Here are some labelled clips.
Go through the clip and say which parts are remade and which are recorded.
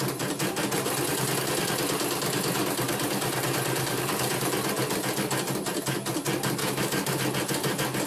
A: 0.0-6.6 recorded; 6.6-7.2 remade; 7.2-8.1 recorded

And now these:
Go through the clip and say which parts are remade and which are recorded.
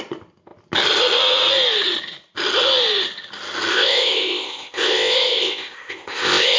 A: 0.0-3.7 recorded; 3.7-6.6 remade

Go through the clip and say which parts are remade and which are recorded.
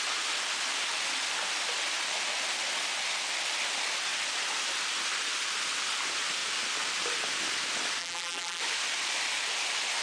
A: 0.0-8.0 recorded; 8.0-8.6 remade; 8.6-10.0 recorded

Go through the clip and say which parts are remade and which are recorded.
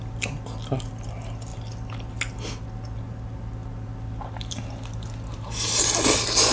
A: 0.0-6.5 recorded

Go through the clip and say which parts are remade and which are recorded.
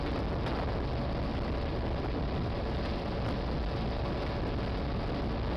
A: 0.0-1.3 recorded; 1.3-4.1 remade; 4.1-5.6 recorded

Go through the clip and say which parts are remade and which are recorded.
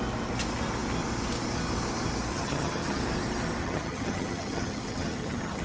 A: 0.0-2.3 recorded; 2.3-3.0 remade; 3.0-3.6 recorded; 3.6-5.6 remade